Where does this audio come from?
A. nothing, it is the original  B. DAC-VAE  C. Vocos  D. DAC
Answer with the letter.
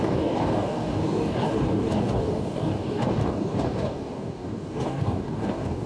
D